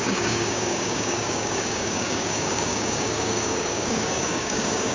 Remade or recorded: remade